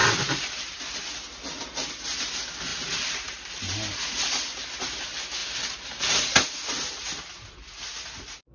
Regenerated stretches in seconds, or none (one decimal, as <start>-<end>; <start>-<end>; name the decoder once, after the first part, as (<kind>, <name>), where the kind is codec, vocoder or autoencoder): 2.7-3.7 (vocoder, BigVGAN v2); 5.4-6.2